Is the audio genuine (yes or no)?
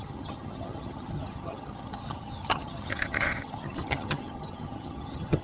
no